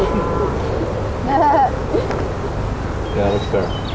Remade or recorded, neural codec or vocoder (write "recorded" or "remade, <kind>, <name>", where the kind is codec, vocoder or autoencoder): recorded